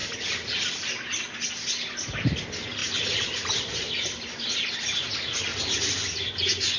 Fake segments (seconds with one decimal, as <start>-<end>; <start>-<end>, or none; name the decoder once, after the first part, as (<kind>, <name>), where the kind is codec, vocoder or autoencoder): 0.0-1.5 (vocoder, BigVGAN v2); 2.8-4.7; 5.5-6.3